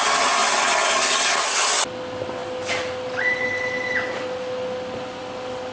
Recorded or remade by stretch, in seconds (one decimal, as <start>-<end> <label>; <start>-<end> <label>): 0.0-5.7 recorded